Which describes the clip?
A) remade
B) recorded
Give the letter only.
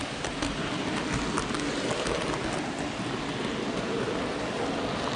B